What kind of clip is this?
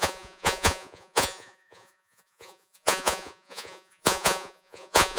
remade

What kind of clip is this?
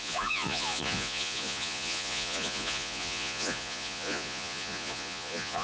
remade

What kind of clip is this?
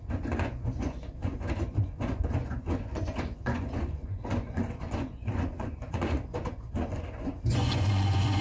remade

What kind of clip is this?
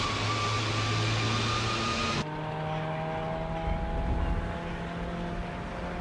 recorded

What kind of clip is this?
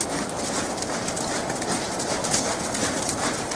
recorded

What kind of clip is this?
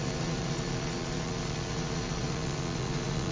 remade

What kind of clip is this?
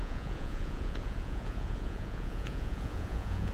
remade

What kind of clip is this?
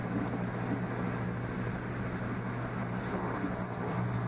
recorded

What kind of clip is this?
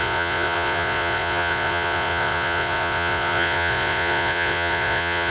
remade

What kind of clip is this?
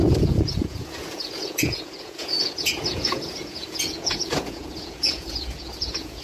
remade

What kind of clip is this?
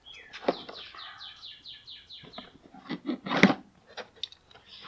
recorded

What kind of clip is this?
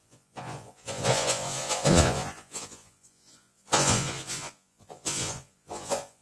remade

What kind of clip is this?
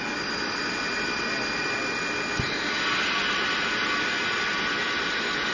recorded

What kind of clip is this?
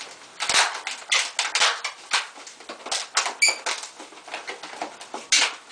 recorded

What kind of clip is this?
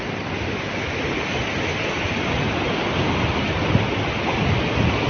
recorded